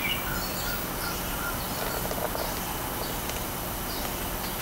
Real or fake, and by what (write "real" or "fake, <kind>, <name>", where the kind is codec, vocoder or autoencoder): real